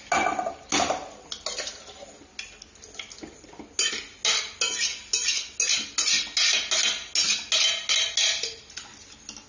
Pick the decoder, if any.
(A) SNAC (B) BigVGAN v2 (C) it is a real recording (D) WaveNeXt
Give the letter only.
C